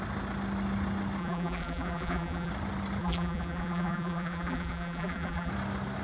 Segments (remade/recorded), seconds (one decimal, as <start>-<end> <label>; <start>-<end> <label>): 0.0-1.2 recorded; 1.2-2.5 remade; 2.5-3.0 recorded; 3.0-5.5 remade; 5.5-6.0 recorded